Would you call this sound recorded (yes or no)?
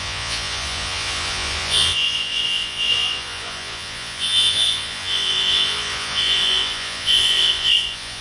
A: no